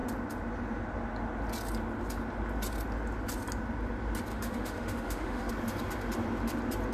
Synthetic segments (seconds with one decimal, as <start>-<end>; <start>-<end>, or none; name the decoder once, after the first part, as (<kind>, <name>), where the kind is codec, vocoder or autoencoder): 4.3-5.5 (autoencoder, DAC-VAE)

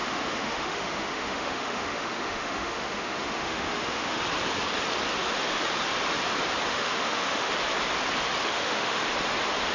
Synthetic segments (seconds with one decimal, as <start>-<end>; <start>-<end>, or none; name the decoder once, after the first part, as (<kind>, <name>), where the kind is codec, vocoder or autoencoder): 0.0-4.2 (autoencoder, DAC-VAE); 6.7-7.5; 8.4-9.0